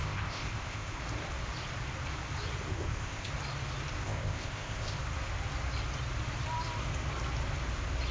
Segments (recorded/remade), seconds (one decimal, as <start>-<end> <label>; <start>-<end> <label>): 0.0-1.0 remade; 1.0-2.7 recorded; 2.7-3.3 remade; 3.3-4.0 recorded; 4.0-5.0 remade; 5.0-8.1 recorded